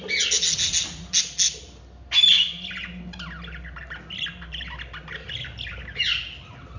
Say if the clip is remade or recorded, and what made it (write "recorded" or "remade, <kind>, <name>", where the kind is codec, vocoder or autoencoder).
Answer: recorded